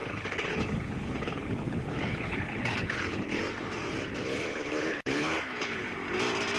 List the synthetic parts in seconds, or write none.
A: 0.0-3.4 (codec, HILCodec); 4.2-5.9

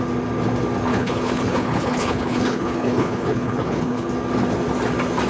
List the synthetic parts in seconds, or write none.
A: 0.9-4.1 (codec, HILCodec)

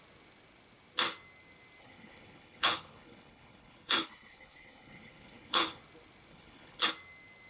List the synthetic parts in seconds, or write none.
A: 1.8-5.8 (codec, HILCodec); 6.3-6.9